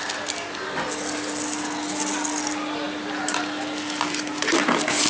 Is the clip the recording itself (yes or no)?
yes